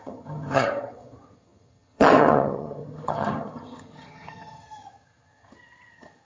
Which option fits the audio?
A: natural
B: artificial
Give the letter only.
B